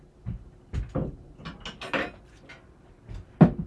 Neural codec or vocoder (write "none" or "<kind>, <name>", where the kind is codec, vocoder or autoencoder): none